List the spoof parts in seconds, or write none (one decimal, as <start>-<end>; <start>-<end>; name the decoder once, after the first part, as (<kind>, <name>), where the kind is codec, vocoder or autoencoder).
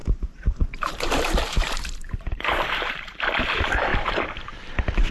0.0-3.1 (vocoder, BigVGAN v2)